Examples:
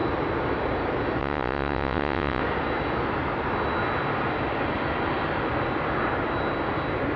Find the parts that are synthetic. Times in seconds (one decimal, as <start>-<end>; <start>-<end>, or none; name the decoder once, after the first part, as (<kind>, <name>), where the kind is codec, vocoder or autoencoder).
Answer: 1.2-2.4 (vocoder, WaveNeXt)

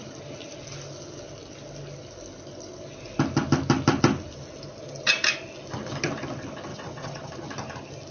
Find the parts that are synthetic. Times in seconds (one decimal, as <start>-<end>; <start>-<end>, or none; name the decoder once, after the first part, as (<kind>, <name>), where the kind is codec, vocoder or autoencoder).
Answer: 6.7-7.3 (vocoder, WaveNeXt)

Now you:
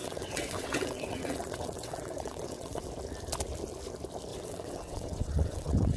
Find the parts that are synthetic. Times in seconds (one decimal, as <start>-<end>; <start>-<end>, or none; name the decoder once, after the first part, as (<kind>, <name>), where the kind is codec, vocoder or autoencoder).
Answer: 0.0-2.9 (vocoder, WaveNeXt); 4.3-6.0